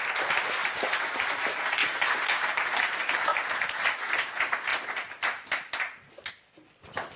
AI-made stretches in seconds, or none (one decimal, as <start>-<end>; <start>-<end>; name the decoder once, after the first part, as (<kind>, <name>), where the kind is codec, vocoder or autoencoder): 0.6-1.3 (vocoder, BigVGAN v2); 1.8-2.6